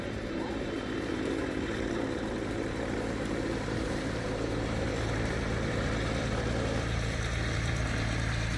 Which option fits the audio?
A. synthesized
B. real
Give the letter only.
A